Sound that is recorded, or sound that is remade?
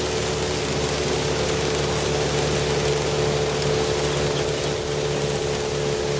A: recorded